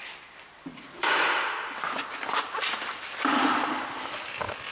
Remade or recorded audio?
remade